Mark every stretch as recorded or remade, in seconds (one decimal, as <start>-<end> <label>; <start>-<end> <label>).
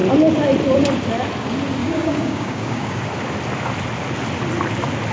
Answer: 0.0-1.8 recorded; 1.8-3.0 remade; 3.0-5.1 recorded